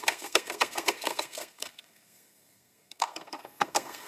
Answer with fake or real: fake